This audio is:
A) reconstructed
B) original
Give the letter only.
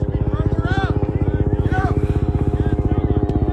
A